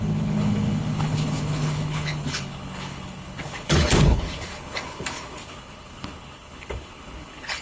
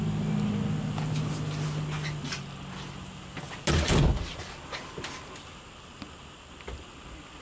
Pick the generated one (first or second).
first